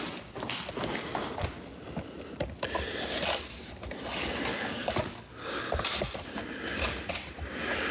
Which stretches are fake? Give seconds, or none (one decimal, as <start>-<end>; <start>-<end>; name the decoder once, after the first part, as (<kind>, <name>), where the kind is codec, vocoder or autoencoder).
4.5-5.6 (codec, DAC)